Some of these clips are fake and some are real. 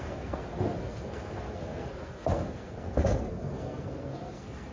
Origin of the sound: fake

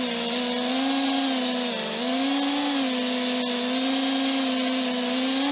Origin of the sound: real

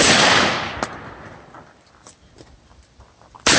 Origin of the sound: real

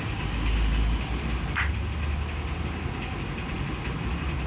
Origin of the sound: real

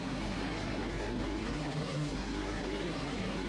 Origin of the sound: fake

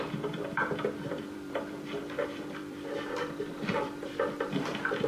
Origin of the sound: fake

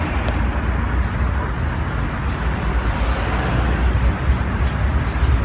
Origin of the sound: real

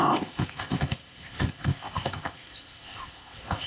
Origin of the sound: fake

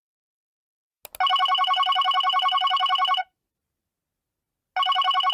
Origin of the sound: real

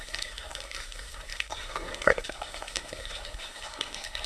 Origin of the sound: fake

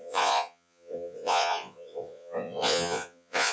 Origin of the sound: fake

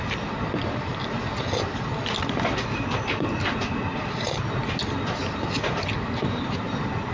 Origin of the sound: real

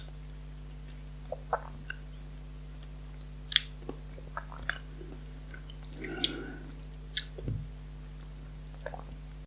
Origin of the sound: real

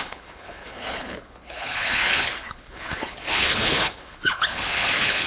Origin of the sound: fake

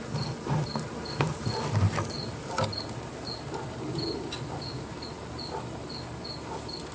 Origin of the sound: real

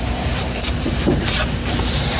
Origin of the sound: fake